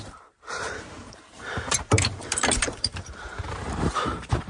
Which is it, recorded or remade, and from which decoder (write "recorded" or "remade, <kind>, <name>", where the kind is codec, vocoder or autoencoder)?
remade, vocoder, BigVGAN v2